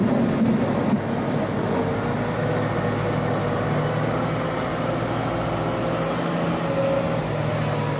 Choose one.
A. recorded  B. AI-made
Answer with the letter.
A